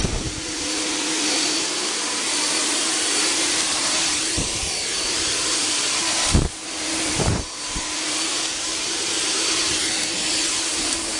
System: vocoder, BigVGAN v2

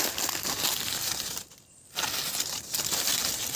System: none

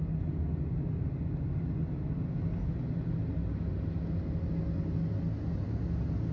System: none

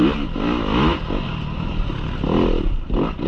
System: none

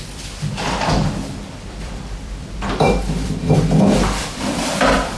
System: vocoder, BigVGAN v2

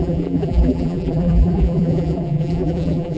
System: vocoder, BigVGAN v2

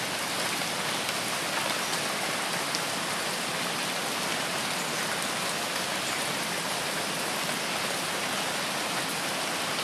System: none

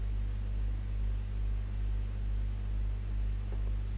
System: none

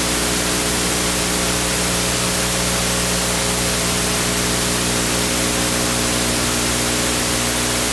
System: none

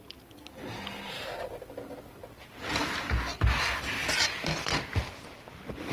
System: none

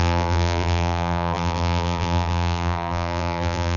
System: vocoder, BigVGAN v2